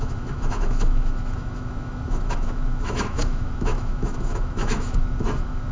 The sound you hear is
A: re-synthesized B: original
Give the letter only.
A